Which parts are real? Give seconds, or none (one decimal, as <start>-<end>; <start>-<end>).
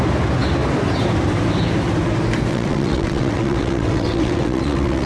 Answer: 0.0-2.5